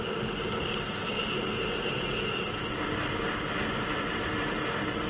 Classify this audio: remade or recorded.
recorded